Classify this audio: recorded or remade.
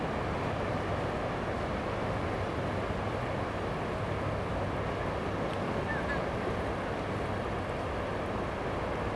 recorded